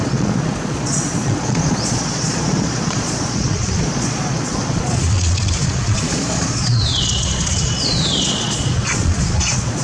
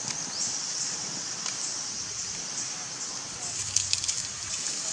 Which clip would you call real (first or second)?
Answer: second